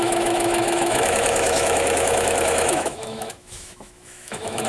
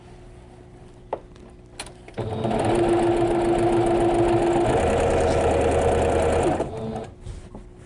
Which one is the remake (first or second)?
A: first